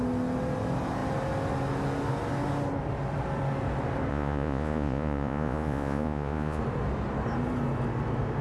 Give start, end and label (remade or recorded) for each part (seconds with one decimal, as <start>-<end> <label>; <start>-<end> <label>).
0.0-4.1 recorded; 4.1-6.6 remade; 6.6-8.4 recorded